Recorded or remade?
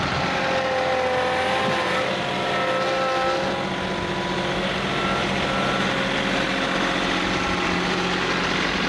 recorded